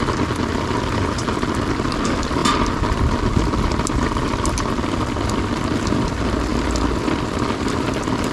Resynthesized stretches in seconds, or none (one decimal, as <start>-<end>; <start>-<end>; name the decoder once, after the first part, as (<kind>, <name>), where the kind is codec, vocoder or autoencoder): none